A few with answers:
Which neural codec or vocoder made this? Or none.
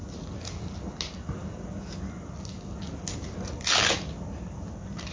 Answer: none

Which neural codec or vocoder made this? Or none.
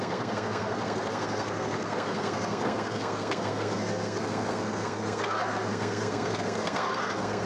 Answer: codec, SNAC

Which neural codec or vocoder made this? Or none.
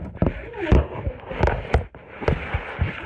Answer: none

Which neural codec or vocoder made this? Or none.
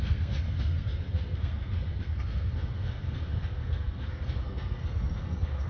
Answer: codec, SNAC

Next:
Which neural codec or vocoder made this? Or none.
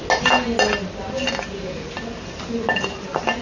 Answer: none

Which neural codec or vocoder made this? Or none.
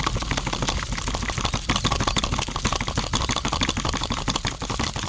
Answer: none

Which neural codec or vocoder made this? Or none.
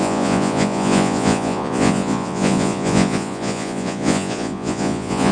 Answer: vocoder, Vocos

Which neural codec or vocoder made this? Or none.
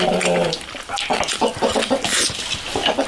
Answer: none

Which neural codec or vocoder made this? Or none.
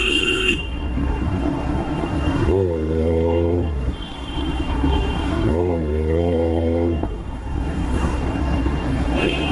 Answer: codec, SNAC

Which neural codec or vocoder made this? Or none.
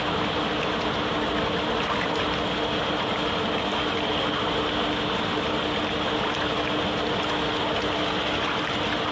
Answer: none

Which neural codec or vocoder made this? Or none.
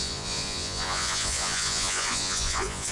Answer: vocoder, Vocos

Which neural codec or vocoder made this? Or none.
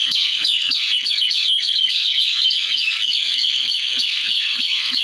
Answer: codec, SNAC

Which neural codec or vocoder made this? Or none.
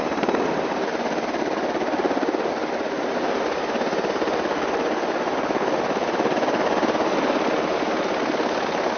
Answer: none